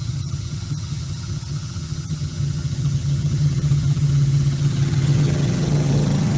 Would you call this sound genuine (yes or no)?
no